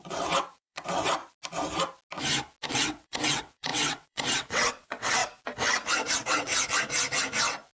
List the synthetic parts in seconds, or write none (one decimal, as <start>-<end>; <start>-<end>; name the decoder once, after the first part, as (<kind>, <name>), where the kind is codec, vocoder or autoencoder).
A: 0.0-1.2 (vocoder, WaveNeXt); 2.7-5.2; 6.1-6.5